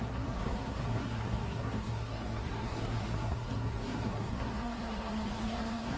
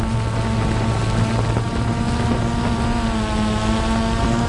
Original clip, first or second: second